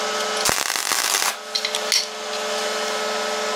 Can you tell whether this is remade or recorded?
recorded